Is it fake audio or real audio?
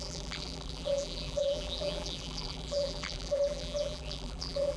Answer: fake